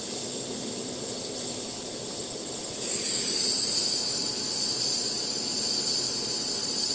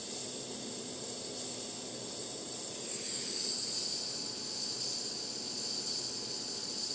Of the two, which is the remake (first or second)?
first